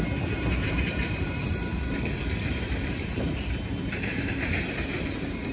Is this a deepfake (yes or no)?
yes